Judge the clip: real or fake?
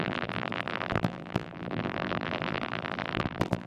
fake